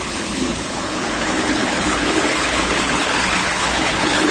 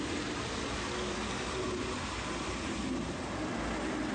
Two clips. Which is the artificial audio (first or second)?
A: first